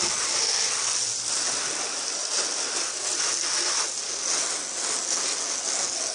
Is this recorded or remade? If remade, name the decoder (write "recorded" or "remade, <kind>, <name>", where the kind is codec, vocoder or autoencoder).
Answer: recorded